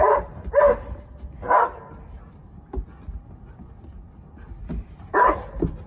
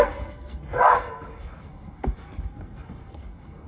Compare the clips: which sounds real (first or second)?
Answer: first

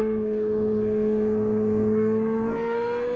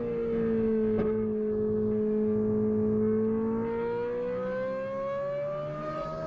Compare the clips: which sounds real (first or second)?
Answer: second